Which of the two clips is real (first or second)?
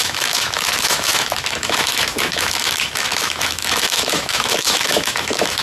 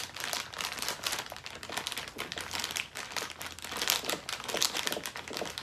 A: second